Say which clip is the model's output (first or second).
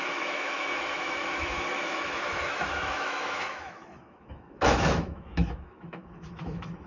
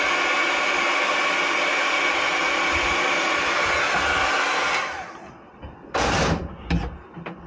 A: first